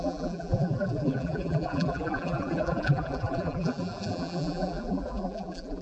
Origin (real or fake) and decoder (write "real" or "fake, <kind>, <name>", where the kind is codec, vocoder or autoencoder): fake, vocoder, BigVGAN v2